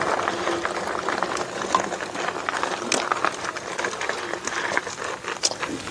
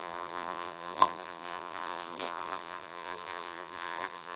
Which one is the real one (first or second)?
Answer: first